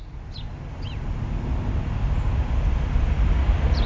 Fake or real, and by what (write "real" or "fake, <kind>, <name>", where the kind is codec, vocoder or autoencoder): real